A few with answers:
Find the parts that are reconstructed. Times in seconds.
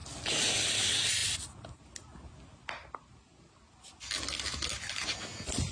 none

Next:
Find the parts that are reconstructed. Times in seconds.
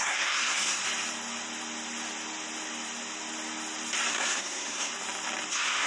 0.0-0.8; 4.1-4.9; 5.5-5.9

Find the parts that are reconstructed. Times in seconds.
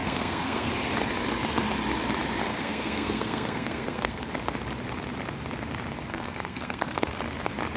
0.0-0.7; 2.5-4.3; 6.1-7.2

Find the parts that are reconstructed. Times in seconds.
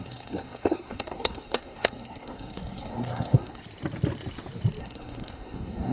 0.0-3.6; 4.8-5.9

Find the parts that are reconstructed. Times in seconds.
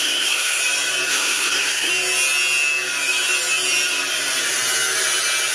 0.0-0.6; 1.1-1.9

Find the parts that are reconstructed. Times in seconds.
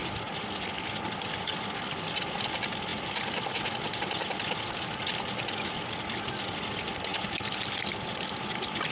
none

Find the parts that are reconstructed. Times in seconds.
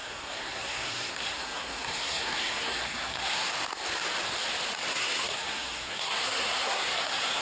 0.0-3.5; 4.9-7.4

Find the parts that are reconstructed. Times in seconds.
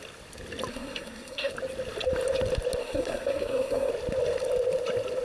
0.7-1.5; 2.8-3.9